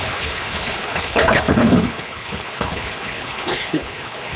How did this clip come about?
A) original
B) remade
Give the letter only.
B